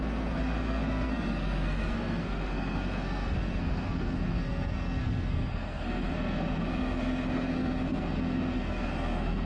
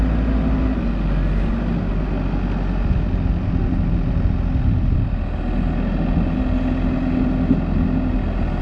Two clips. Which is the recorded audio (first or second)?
second